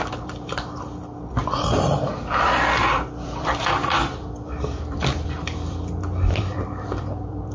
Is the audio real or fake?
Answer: fake